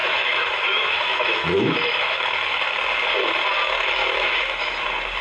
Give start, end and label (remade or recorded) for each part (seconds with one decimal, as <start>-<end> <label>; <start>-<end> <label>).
0.0-2.7 remade; 2.7-3.8 recorded; 3.8-4.7 remade; 4.7-5.2 recorded